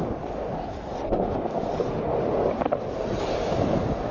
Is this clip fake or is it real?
real